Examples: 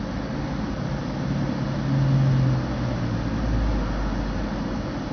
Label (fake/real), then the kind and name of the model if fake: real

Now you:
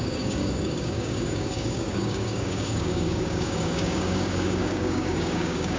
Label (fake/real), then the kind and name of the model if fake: fake, codec, DAC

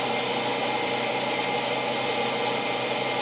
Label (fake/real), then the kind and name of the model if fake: real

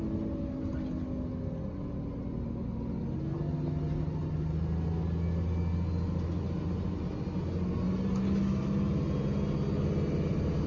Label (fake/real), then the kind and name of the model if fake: real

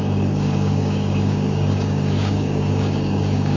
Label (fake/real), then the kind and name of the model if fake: fake, codec, DAC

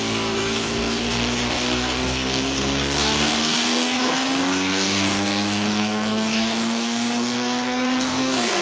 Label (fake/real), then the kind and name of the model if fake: fake, codec, DAC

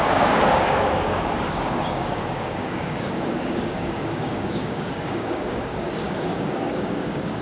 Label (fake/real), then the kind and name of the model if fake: fake, codec, DAC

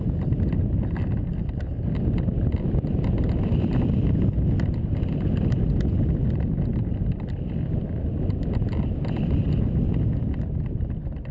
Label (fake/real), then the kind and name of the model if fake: real